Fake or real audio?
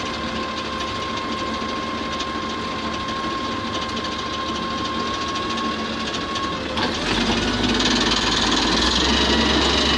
real